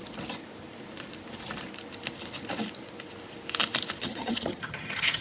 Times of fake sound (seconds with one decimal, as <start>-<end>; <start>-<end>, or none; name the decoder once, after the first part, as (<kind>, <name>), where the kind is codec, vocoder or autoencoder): 4.0-5.2 (vocoder, HiFi-GAN)